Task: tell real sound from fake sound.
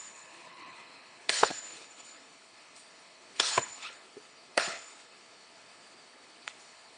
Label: fake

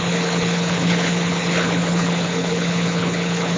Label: fake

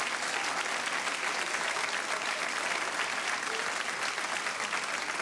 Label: real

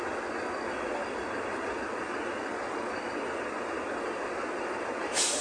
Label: real